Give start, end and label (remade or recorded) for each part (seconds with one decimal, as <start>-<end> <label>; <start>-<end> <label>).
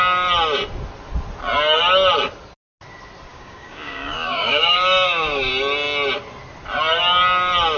0.0-3.3 recorded; 3.3-5.5 remade; 5.5-7.8 recorded